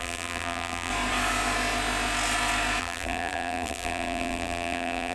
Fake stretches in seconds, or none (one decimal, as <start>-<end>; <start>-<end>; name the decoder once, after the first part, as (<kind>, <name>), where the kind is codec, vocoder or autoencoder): 0.0-0.9 (vocoder, BigVGAN v2); 2.8-5.1